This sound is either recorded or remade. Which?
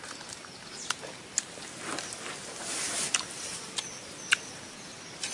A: remade